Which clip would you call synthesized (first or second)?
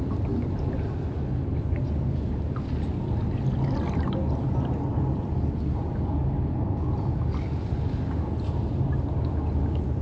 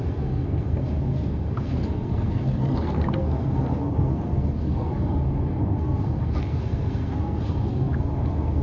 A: second